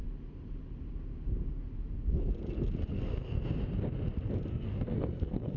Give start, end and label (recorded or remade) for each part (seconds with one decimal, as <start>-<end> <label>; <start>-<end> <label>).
0.0-2.9 recorded; 2.9-3.4 remade; 3.4-4.5 recorded; 4.5-5.6 remade